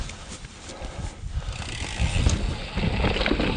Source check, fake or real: real